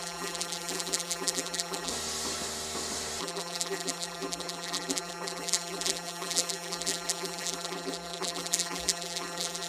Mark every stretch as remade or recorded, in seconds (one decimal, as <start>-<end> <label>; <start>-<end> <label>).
0.0-1.9 remade; 1.9-3.2 recorded; 3.2-9.7 remade